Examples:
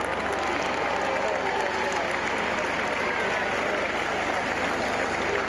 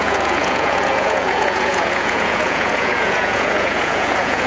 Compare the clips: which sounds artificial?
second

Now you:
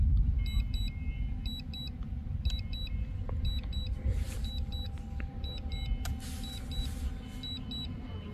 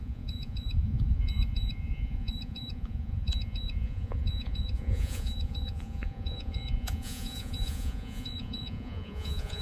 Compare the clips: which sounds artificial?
second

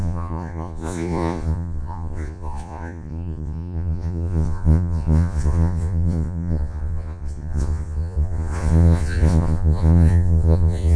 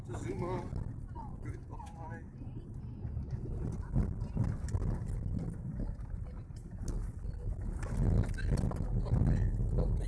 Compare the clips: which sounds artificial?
first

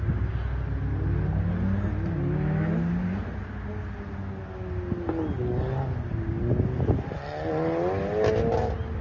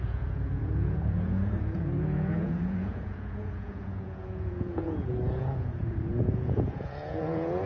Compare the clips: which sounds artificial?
second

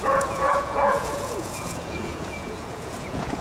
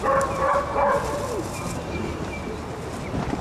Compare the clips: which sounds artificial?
first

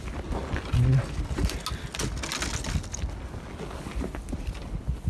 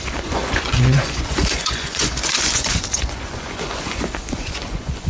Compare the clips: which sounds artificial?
second